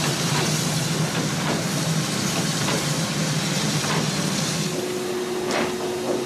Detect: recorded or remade recorded